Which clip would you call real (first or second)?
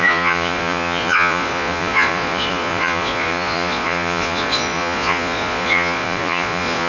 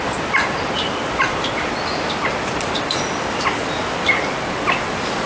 second